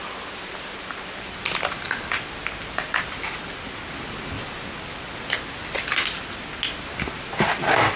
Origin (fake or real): real